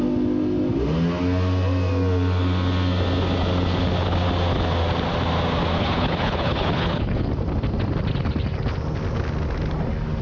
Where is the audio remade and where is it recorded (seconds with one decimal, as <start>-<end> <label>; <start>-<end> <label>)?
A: 0.0-5.8 recorded; 5.8-7.3 remade; 7.3-10.2 recorded